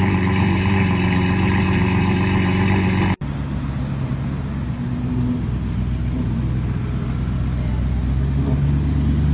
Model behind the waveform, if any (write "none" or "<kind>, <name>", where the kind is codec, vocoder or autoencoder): none